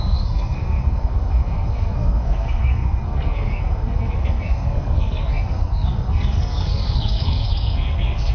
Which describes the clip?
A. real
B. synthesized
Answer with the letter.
B